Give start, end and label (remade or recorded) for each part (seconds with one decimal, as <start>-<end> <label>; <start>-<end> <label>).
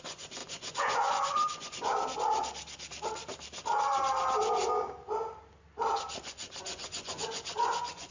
0.0-1.9 remade; 1.9-6.2 recorded; 6.2-8.1 remade